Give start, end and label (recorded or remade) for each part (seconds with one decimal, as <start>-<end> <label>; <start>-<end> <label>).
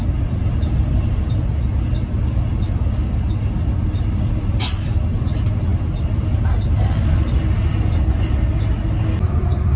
0.0-9.8 recorded